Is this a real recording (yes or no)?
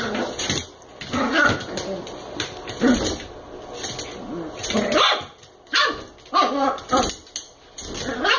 yes